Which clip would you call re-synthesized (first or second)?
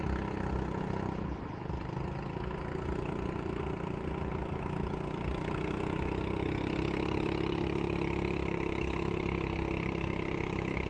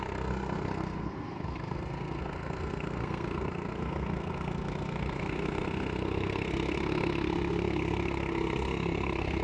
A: second